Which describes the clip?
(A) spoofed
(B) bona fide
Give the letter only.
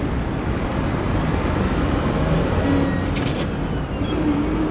B